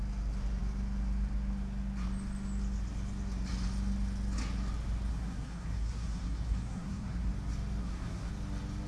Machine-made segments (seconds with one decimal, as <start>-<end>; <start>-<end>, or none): 5.1-7.3; 7.8-8.3